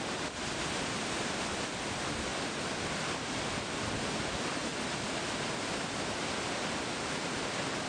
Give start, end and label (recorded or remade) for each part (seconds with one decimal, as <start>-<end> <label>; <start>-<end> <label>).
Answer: 0.0-4.7 remade; 4.7-7.1 recorded; 7.1-7.9 remade